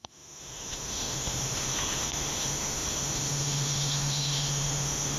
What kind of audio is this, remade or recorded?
remade